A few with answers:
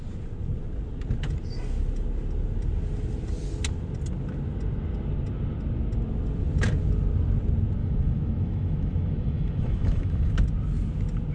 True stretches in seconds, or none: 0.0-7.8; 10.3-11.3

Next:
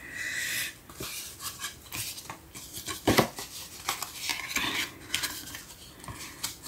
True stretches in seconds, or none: 0.0-6.7

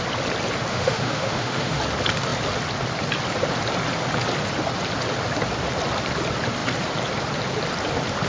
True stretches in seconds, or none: 0.0-0.7; 1.8-8.3

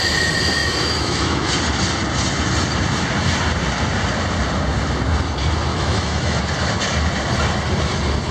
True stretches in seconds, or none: 0.0-0.6; 1.5-5.7; 6.4-8.3

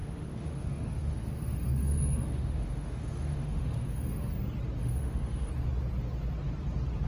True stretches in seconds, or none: 4.3-4.8; 5.5-7.1

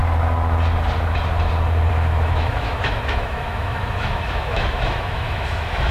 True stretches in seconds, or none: 0.0-1.9

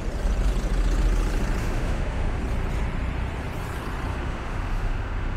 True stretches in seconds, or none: 0.0-1.6; 2.4-4.1